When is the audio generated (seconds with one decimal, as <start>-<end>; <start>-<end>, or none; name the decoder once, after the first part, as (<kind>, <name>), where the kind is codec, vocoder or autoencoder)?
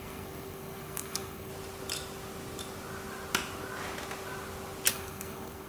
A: 0.0-1.5 (codec, SNAC); 4.9-5.7